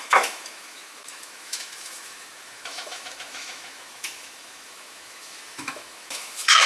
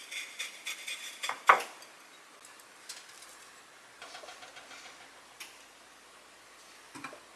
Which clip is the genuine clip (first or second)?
second